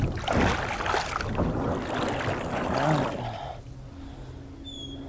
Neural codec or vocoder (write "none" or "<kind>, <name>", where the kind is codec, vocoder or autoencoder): none